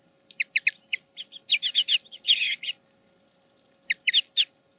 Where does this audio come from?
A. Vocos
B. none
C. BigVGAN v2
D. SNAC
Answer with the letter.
B